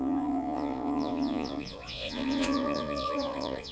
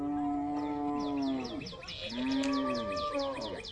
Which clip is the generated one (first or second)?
first